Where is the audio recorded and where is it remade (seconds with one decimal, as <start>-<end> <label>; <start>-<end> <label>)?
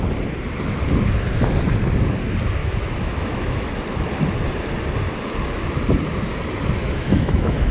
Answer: 0.0-2.6 recorded; 2.6-3.7 remade; 3.7-6.8 recorded; 6.8-7.7 remade